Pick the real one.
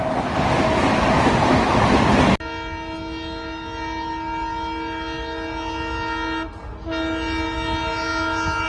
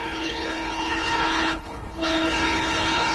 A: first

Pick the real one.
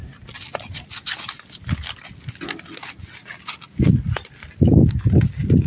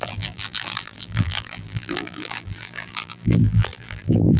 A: first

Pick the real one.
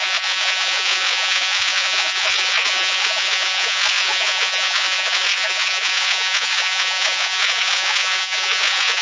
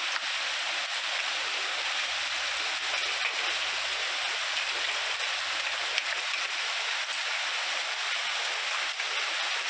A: second